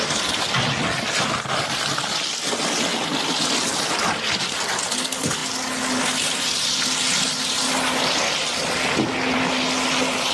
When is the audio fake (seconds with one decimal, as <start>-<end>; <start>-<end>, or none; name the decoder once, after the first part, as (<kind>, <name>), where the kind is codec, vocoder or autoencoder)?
none